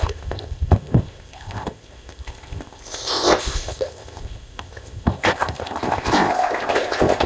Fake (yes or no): yes